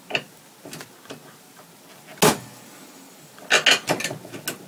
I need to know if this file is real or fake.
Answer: real